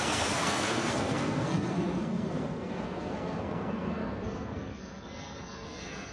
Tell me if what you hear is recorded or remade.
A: remade